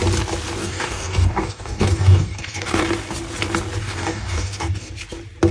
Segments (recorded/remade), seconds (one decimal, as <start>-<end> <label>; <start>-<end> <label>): 0.0-0.6 recorded; 0.6-2.8 remade; 2.8-3.8 recorded; 3.8-4.9 remade; 4.9-5.5 recorded